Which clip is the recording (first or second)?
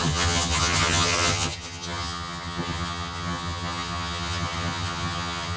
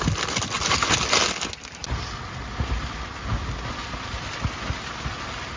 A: second